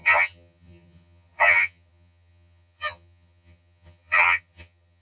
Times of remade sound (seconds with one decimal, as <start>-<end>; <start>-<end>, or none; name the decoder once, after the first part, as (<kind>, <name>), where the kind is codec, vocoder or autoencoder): 0.0-5.0 (vocoder, HiFi-GAN)